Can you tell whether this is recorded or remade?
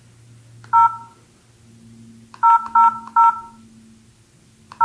recorded